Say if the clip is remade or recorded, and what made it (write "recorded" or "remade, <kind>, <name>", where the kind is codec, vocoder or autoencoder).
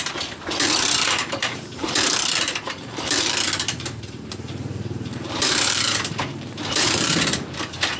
remade, vocoder, BigVGAN v2